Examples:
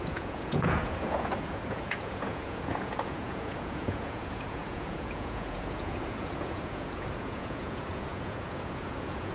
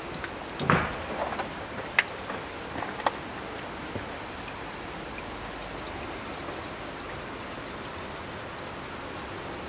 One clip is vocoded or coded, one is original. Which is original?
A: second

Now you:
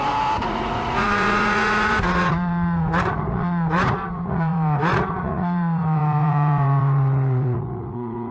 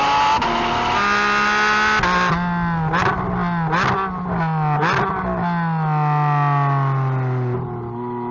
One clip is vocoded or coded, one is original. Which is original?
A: second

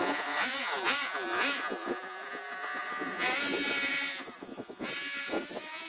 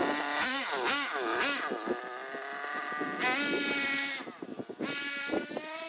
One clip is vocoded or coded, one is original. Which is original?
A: second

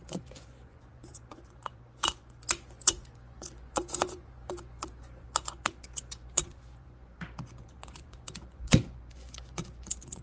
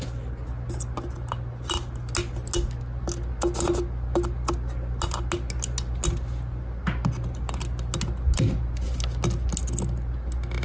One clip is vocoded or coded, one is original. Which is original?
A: second